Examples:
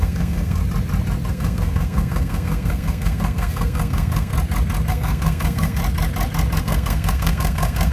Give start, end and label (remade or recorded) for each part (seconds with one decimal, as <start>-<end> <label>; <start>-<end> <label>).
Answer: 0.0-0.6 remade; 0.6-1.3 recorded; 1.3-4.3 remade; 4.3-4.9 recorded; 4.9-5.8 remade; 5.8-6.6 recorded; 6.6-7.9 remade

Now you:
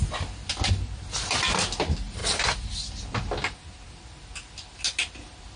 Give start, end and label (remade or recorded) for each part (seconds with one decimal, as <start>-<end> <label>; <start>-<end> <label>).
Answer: 0.0-5.6 recorded

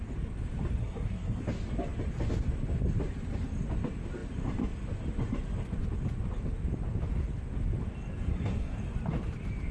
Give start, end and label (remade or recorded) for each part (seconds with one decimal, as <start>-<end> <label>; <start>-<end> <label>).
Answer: 0.0-0.8 recorded; 0.8-1.4 remade; 1.4-8.3 recorded; 8.3-8.8 remade; 8.8-9.7 recorded

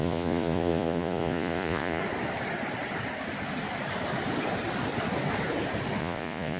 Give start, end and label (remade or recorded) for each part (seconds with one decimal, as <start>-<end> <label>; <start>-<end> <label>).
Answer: 0.0-2.0 remade; 2.0-6.0 recorded; 6.0-6.6 remade

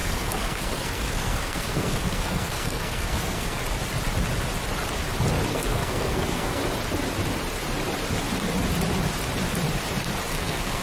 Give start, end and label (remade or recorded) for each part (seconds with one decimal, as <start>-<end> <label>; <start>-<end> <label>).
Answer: 0.0-3.6 remade; 3.6-5.5 recorded; 5.5-6.6 remade; 6.6-10.3 recorded; 10.3-10.8 remade

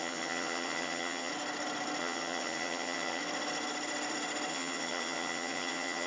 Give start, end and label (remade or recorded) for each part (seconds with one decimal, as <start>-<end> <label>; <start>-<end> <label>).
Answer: 0.0-1.3 remade; 1.3-2.0 recorded; 2.0-3.2 remade; 3.2-4.5 recorded; 4.5-6.1 remade